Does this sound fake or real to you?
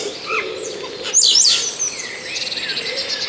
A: fake